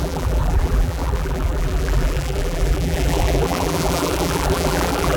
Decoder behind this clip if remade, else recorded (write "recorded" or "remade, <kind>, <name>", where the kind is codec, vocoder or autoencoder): remade, vocoder, BigVGAN v2